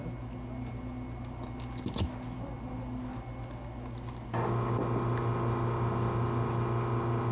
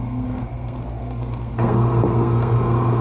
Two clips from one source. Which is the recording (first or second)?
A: first